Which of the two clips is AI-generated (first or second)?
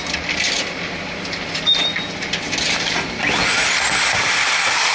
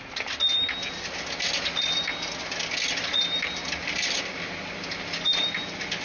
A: first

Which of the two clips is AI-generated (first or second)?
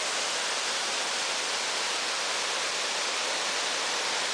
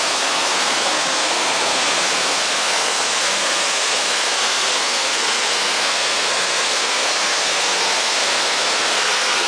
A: second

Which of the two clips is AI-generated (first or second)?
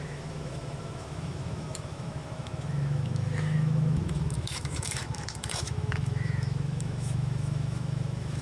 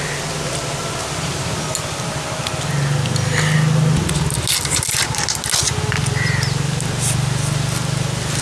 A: first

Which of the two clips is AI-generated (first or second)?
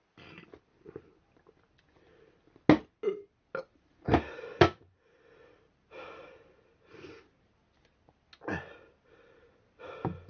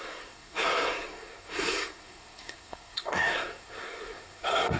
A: second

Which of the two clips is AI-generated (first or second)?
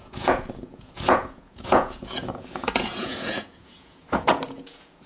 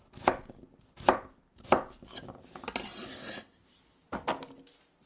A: first